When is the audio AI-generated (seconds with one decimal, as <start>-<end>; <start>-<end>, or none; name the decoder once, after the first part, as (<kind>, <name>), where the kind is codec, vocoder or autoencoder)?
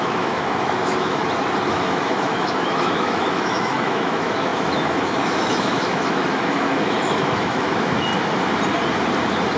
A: 0.0-1.2 (autoencoder, DAC-VAE); 1.7-8.1